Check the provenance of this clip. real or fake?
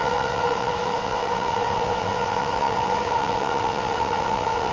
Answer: fake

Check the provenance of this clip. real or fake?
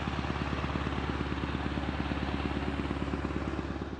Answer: real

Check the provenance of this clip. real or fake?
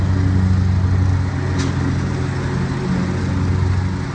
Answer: real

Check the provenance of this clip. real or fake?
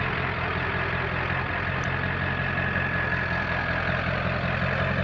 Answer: real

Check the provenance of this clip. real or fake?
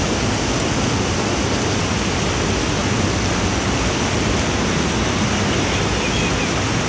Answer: real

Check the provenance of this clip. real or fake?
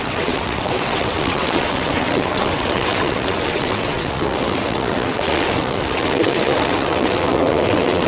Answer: fake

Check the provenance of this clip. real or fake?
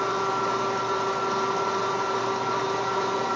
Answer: real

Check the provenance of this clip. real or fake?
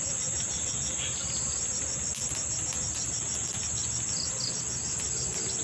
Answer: real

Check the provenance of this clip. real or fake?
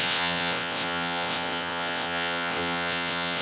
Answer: fake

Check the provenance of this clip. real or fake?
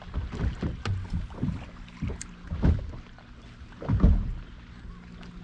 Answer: real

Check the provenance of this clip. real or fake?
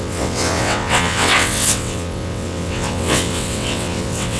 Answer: fake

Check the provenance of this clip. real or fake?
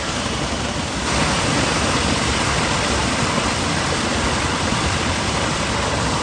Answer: real